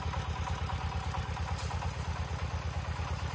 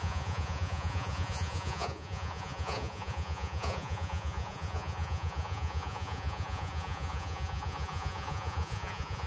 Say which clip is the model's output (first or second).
second